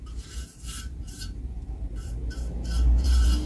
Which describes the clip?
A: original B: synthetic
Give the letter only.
B